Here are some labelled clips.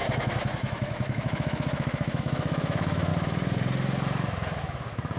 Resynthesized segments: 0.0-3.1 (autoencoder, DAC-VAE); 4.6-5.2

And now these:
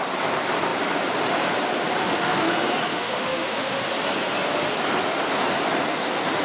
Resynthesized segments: 2.0-2.5 (autoencoder, DAC-VAE); 2.9-3.8

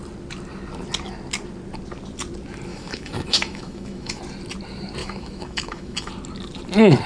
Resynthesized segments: 2.7-4.2 (autoencoder, DAC-VAE); 5.0-6.1